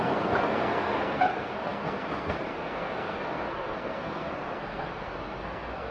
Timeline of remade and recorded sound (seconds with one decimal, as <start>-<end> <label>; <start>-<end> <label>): 0.0-5.9 remade